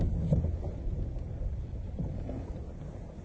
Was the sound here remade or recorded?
recorded